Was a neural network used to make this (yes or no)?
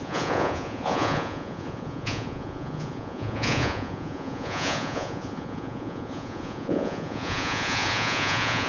yes